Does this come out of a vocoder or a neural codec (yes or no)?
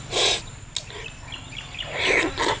no